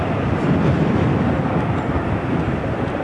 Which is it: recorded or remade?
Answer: recorded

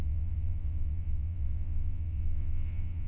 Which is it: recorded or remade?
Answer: remade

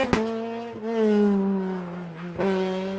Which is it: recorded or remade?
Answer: recorded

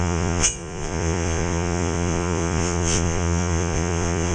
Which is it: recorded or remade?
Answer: remade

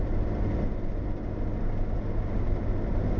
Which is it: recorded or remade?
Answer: recorded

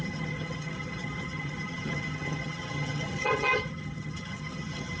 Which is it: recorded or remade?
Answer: remade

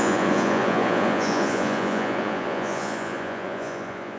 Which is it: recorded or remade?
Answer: remade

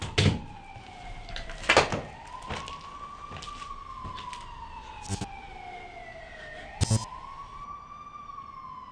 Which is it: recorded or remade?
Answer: recorded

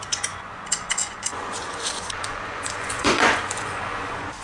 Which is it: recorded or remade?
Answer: remade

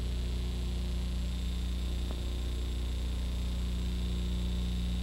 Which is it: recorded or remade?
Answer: recorded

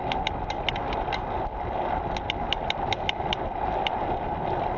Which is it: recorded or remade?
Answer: recorded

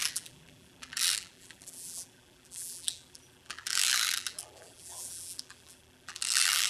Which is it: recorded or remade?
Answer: remade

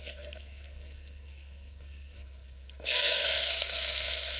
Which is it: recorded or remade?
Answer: remade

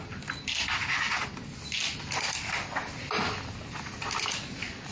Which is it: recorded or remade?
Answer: recorded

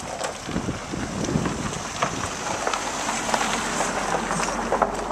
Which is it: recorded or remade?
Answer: recorded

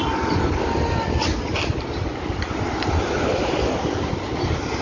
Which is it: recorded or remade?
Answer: recorded